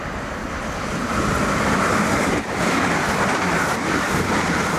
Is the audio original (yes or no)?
no